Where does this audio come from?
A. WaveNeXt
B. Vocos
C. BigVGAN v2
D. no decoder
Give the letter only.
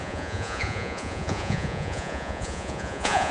B